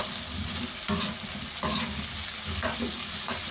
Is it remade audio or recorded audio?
recorded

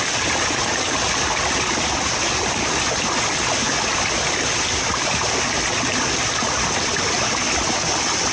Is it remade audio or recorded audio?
recorded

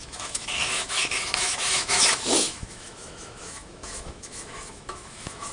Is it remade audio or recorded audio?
remade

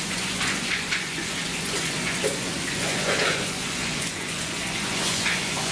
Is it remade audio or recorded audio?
remade